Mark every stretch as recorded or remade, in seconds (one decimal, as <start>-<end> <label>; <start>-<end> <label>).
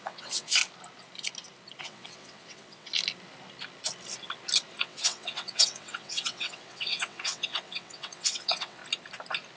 0.0-0.6 remade; 0.6-1.8 recorded; 1.8-2.9 remade; 2.9-4.8 recorded; 4.8-8.8 remade; 8.8-9.6 recorded